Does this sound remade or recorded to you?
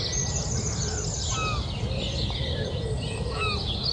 recorded